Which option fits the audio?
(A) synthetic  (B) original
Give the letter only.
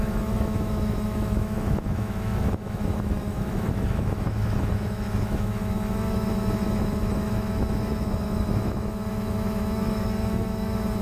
A